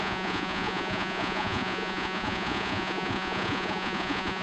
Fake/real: fake